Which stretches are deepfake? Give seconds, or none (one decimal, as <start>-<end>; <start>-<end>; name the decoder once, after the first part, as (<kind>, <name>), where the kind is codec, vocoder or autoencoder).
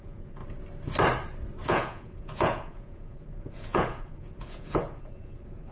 0.0-0.4 (vocoder, Vocos); 1.7-5.7